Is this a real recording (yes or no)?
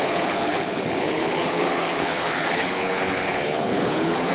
no